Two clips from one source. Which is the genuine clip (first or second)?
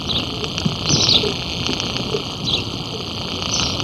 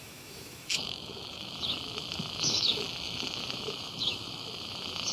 first